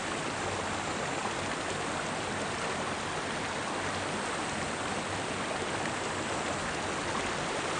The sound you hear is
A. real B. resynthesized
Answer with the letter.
A